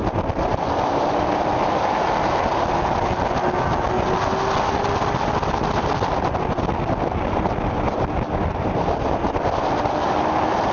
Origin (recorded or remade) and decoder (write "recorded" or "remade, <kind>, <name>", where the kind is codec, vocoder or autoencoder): recorded